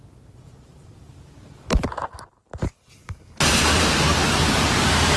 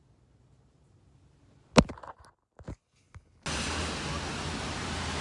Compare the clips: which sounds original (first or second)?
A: second